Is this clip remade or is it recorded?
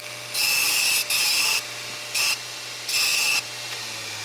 recorded